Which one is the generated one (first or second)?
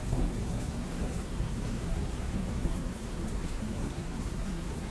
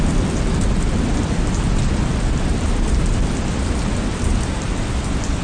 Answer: first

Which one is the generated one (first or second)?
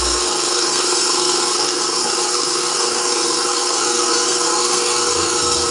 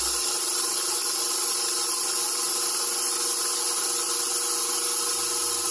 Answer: first